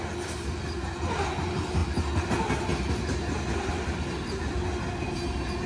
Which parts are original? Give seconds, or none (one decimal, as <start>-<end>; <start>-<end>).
0.0-5.7